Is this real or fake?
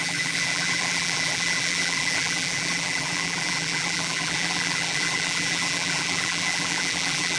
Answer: fake